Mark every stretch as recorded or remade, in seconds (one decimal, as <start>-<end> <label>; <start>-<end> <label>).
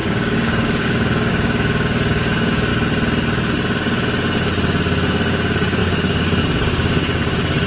0.0-2.7 remade; 2.7-5.3 recorded; 5.3-7.7 remade